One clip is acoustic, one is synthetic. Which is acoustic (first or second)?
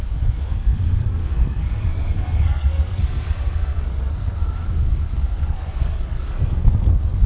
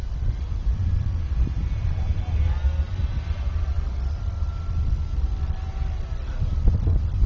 second